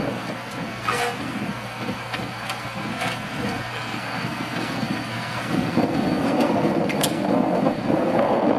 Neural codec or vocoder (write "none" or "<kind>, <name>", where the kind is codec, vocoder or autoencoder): codec, SNAC